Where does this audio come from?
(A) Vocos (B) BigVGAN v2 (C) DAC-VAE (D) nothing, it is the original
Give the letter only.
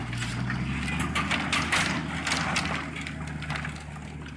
D